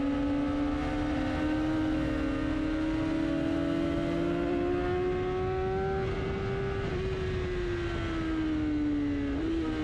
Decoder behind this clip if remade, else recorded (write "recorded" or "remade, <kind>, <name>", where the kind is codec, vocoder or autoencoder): recorded